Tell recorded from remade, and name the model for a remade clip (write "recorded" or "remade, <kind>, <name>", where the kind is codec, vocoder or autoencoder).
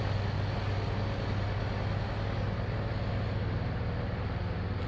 recorded